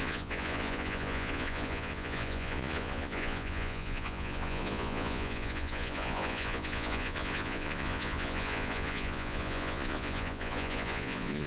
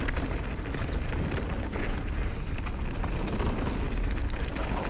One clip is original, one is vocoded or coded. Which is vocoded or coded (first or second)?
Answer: first